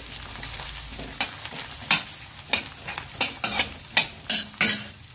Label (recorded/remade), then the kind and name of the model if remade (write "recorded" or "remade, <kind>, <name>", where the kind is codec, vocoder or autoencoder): recorded